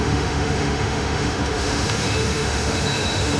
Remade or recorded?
remade